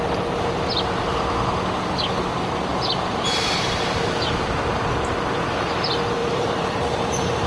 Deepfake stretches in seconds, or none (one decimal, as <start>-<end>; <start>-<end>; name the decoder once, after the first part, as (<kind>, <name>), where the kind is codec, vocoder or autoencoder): 2.7-4.9 (vocoder, BigVGAN v2); 6.2-7.5